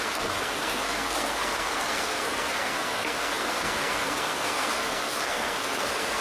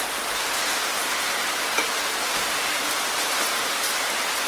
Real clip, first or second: second